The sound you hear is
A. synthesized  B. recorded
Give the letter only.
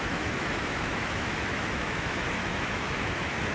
A